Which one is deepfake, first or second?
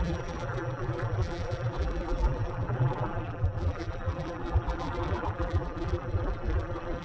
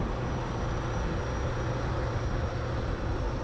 first